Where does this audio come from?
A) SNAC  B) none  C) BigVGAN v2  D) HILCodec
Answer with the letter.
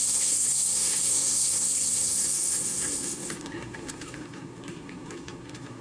A